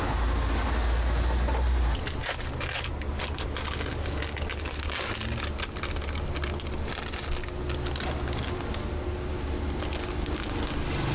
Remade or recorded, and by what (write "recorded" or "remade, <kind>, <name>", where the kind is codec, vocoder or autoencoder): recorded